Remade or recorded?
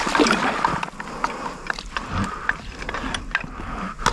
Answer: recorded